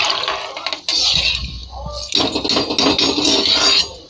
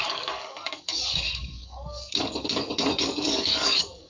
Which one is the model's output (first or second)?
second